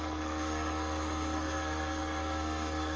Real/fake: fake